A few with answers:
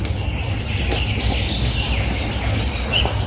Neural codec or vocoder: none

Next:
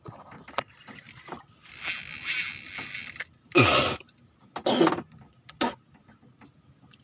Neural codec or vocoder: none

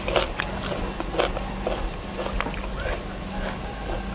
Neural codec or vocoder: none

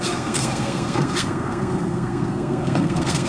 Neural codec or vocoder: codec, SNAC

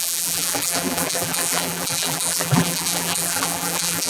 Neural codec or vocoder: vocoder, BigVGAN v2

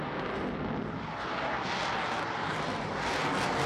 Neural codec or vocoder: none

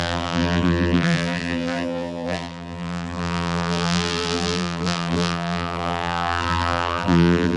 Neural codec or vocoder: vocoder, BigVGAN v2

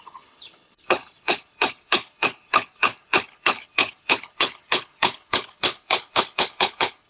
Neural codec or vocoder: codec, HILCodec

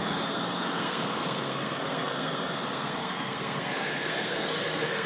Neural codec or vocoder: codec, SNAC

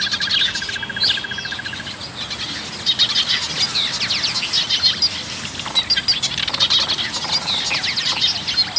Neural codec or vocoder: none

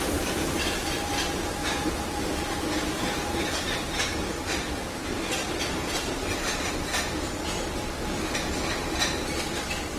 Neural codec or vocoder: none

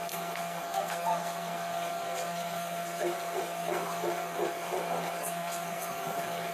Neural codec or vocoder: codec, SNAC